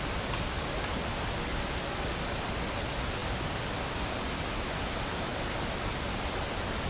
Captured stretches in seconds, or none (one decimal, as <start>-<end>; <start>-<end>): 0.0-6.9